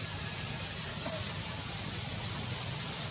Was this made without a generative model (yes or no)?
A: yes